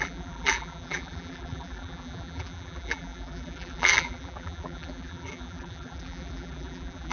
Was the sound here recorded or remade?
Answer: remade